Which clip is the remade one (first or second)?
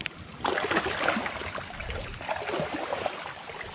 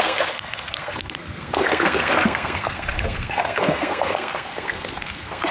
second